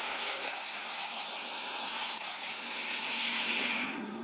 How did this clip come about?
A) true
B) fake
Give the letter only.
B